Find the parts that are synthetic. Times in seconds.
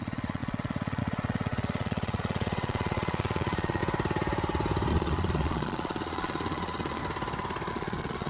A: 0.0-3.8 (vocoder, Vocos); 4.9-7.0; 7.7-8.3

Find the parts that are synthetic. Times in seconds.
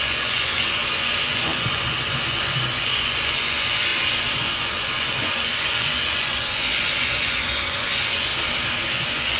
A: 0.0-8.3 (vocoder, Vocos); 8.9-9.4